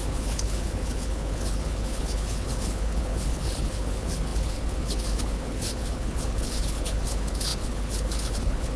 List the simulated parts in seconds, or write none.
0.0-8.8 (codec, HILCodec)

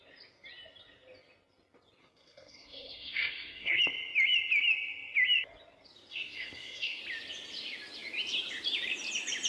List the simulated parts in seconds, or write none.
2.0-3.8 (codec, SNAC); 6.1-7.0

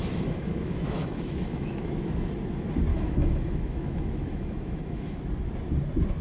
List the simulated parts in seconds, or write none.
0.0-2.3 (autoencoder, DAC-VAE); 2.9-5.2

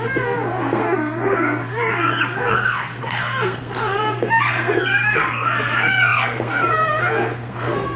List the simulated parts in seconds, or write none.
0.0-8.0 (codec, SNAC)